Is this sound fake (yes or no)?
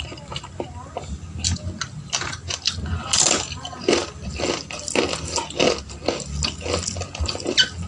no